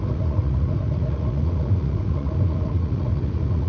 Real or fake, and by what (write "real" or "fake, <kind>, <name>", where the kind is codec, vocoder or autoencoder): fake, vocoder, Vocos